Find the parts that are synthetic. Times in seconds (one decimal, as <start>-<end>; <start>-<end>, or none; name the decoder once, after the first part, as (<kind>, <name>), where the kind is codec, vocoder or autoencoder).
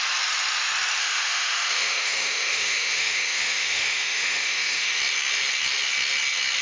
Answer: 1.0-5.0 (autoencoder, DAC-VAE)